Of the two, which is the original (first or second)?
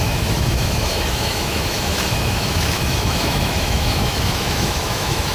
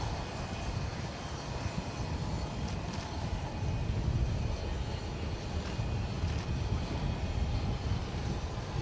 second